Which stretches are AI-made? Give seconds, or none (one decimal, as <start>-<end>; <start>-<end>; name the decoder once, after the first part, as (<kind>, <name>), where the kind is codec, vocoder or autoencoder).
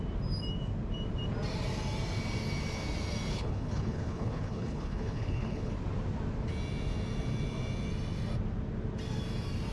3.3-5.7 (codec, HILCodec)